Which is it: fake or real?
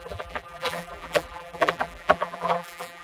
fake